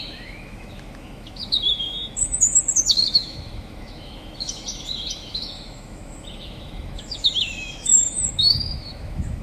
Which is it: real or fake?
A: fake